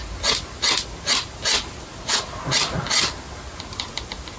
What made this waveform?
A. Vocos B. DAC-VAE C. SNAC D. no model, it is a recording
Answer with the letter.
D